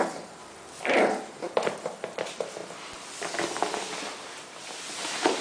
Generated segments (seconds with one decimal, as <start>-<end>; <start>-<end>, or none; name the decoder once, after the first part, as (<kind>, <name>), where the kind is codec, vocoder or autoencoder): 0.0-0.4 (vocoder, BigVGAN v2); 0.9-2.6; 4.0-5.4